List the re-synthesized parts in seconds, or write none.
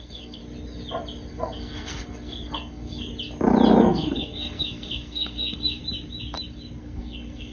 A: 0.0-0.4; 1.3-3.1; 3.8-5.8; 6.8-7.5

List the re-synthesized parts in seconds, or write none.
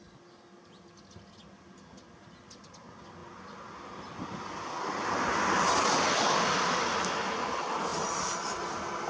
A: none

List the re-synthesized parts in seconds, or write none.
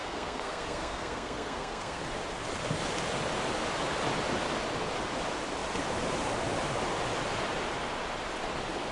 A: 0.0-2.0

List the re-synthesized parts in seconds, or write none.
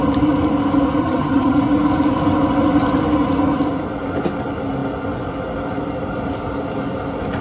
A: 1.0-1.6